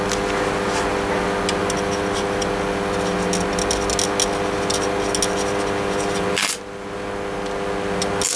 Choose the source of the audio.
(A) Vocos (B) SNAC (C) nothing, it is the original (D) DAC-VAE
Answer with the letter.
C